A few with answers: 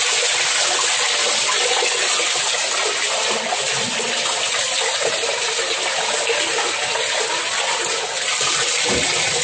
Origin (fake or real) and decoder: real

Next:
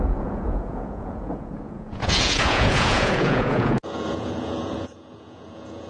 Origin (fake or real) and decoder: fake, vocoder, Vocos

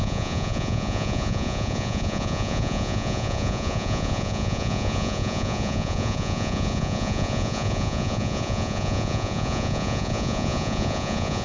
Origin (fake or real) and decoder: fake, vocoder, Vocos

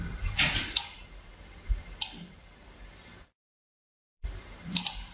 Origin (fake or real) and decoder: fake, vocoder, BigVGAN v2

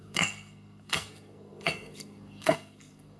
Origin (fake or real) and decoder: fake, codec, SNAC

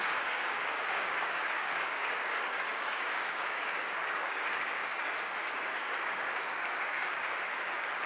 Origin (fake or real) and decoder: fake, codec, DAC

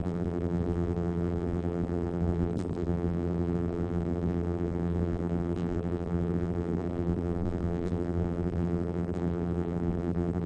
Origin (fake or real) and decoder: fake, vocoder, BigVGAN v2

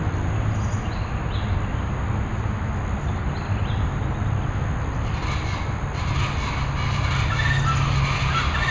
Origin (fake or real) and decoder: real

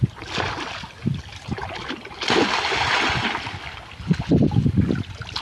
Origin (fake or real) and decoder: real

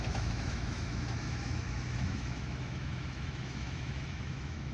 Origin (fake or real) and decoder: fake, autoencoder, DAC-VAE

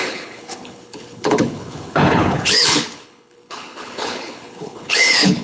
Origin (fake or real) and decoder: fake, codec, HILCodec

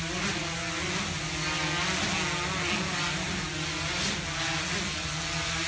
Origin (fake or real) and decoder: real